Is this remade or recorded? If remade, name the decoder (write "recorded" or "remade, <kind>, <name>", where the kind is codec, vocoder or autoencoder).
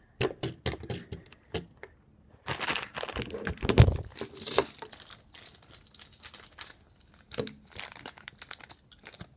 recorded